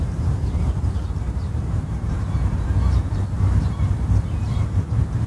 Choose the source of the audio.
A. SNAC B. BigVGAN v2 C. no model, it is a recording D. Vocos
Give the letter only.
B